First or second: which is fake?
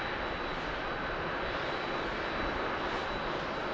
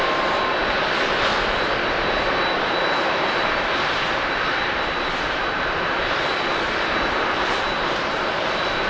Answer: second